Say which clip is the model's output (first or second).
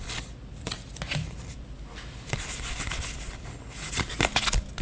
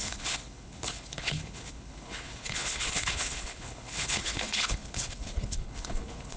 second